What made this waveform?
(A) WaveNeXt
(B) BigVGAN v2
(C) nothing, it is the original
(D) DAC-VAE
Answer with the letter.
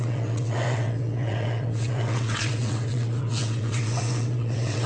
A